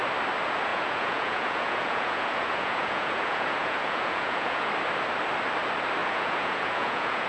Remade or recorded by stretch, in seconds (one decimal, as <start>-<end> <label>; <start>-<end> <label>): 0.0-0.7 recorded; 0.7-4.7 remade; 4.7-6.0 recorded; 6.0-7.3 remade